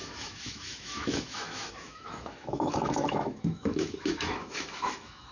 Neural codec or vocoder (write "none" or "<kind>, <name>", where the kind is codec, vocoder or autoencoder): autoencoder, DAC-VAE